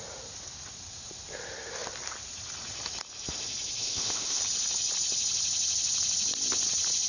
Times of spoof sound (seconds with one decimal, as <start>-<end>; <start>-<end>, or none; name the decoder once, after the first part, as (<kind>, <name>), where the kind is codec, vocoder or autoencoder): 3.8-4.4 (codec, ZipCodec)